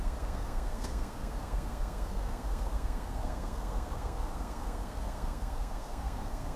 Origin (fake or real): fake